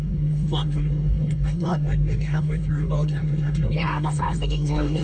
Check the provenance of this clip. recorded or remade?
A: remade